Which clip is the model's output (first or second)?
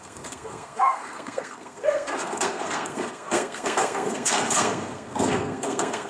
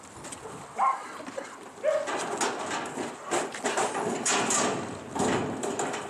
first